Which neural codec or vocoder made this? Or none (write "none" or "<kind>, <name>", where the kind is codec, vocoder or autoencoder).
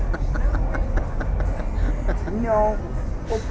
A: none